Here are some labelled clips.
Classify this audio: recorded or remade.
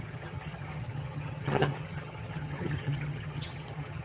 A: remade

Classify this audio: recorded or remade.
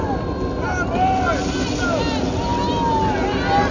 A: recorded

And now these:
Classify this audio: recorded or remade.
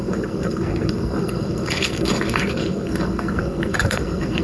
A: remade